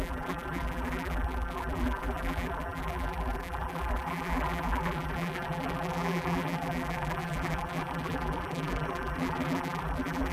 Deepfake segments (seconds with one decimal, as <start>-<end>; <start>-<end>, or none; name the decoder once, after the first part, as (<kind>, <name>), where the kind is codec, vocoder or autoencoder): 0.0-10.3 (vocoder, BigVGAN v2)